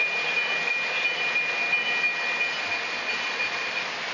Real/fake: real